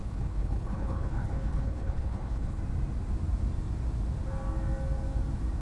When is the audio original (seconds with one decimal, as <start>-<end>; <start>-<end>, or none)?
2.6-5.6